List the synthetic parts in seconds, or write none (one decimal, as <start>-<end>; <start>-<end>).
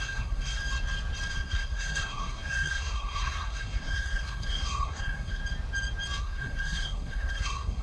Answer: 0.0-0.6; 1.3-5.4; 6.2-7.8